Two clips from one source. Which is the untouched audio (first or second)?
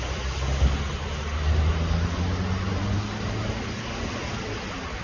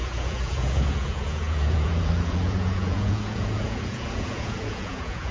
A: first